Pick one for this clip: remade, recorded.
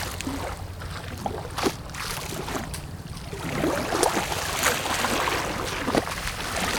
recorded